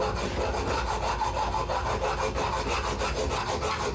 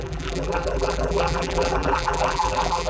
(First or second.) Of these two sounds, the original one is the first